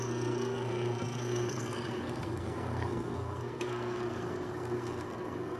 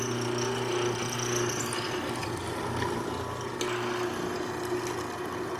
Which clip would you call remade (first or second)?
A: first